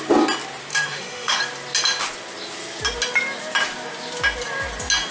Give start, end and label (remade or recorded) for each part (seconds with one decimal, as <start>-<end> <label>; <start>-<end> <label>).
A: 0.0-0.7 recorded; 0.7-1.4 remade; 1.4-5.1 recorded